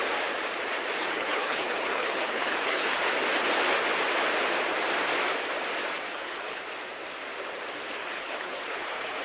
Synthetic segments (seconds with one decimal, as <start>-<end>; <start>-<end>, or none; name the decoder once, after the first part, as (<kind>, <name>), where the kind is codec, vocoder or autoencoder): 1.0-3.0 (codec, HILCodec); 6.1-6.6; 8.0-9.2

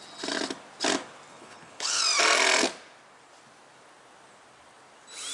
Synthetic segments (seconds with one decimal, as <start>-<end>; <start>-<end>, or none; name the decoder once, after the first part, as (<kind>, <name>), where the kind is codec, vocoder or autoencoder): 1.3-2.0 (codec, HILCodec)

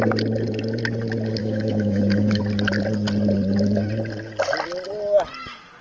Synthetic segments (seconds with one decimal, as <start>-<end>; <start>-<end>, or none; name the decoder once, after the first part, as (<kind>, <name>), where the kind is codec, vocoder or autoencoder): 1.4-2.4 (autoencoder, DAC-VAE)